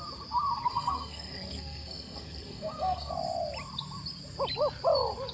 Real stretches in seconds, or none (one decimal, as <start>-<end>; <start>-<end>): 0.0-0.7; 3.1-5.3